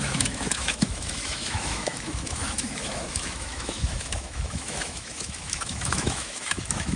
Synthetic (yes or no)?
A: yes